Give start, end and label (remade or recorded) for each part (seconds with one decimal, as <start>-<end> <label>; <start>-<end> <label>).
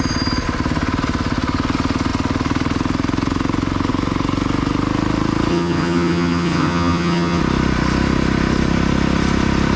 0.0-5.5 recorded; 5.5-7.4 remade; 7.4-9.8 recorded